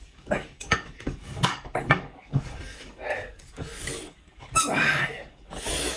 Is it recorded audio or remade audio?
remade